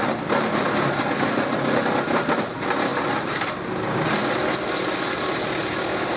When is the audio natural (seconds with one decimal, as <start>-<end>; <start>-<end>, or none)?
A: 0.0-6.2